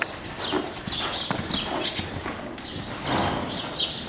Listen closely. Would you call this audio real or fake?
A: real